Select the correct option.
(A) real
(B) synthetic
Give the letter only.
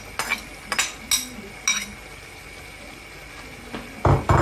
A